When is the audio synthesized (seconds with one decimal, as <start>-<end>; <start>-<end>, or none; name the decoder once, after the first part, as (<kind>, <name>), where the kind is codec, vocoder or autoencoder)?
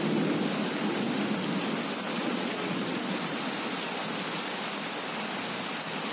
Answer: 2.2-3.0 (vocoder, Vocos)